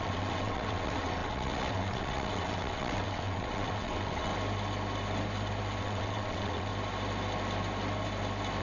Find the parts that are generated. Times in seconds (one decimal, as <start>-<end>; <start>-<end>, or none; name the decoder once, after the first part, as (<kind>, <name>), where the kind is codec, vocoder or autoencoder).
0.0-4.3 (vocoder, WaveNeXt); 5.8-6.7